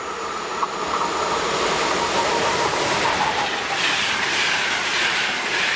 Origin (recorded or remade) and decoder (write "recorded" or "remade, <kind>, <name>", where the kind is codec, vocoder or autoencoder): remade, vocoder, BigVGAN v2